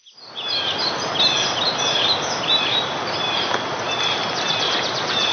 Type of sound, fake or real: real